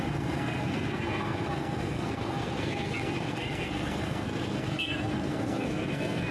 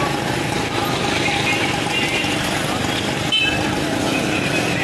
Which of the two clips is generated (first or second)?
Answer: first